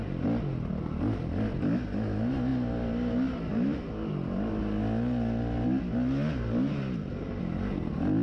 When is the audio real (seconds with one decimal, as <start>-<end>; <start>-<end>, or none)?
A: 0.0-8.2